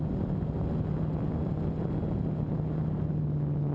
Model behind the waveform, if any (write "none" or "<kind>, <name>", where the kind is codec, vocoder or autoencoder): none